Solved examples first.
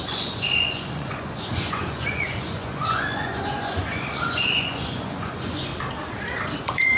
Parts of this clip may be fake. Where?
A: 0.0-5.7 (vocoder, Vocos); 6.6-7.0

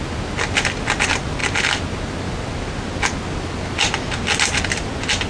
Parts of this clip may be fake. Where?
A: none

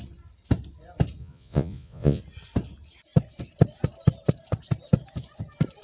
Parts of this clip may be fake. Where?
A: 1.2-2.2 (vocoder, Vocos)